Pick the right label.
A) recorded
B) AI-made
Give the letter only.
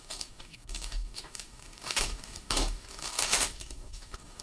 B